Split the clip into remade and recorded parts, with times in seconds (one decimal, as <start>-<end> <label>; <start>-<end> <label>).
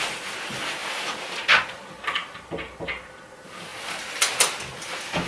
0.0-5.3 recorded